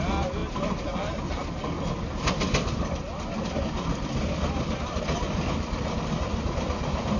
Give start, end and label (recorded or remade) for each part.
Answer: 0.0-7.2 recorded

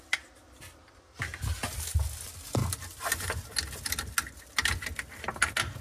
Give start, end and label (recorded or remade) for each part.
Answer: 0.0-5.8 recorded

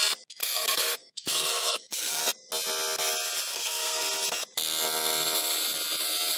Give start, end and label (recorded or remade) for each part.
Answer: 0.0-0.4 recorded; 0.4-2.2 remade; 2.2-3.5 recorded; 3.5-4.0 remade; 4.0-6.4 recorded

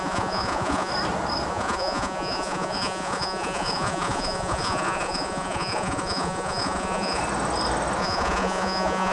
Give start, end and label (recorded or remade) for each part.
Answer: 0.0-0.9 remade; 0.9-1.5 recorded; 1.5-7.2 remade; 7.2-8.0 recorded; 8.0-9.1 remade

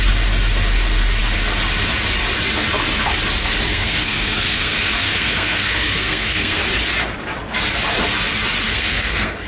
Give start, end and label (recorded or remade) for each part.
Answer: 0.0-3.7 recorded; 3.7-6.6 remade; 6.6-8.7 recorded; 8.7-9.5 remade